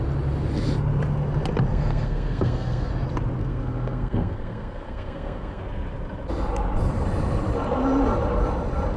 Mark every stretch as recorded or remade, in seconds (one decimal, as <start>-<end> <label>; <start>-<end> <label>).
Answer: 0.0-1.7 recorded; 1.7-2.9 remade; 2.9-3.4 recorded; 3.4-5.6 remade; 5.6-9.0 recorded

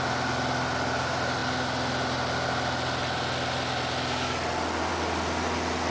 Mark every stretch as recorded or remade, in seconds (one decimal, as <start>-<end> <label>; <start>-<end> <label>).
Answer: 0.0-5.9 recorded

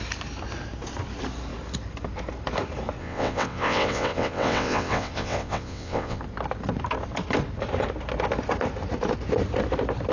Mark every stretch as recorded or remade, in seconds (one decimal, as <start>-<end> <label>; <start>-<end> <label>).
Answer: 0.0-3.0 recorded; 3.0-6.2 remade; 6.2-10.1 recorded

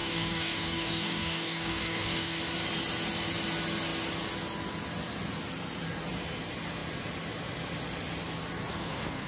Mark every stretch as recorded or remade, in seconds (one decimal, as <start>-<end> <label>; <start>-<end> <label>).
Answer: 0.0-2.4 remade; 2.4-8.7 recorded; 8.7-9.3 remade